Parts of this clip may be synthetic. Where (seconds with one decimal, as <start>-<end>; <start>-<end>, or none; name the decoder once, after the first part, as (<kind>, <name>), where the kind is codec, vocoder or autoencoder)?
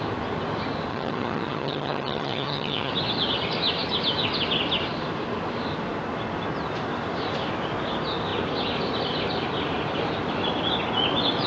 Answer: 0.9-2.9 (vocoder, HiFi-GAN)